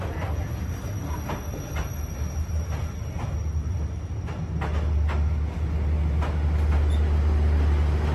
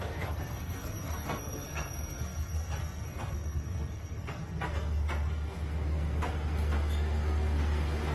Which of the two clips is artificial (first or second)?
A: second